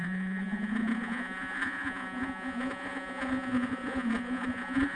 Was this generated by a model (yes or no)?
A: yes